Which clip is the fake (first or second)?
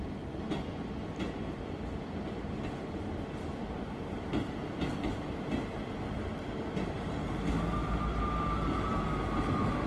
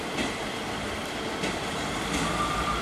second